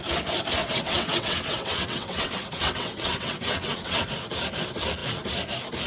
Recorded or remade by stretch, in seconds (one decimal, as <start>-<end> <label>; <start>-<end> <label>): 0.0-0.6 recorded; 0.6-4.1 remade; 4.1-5.9 recorded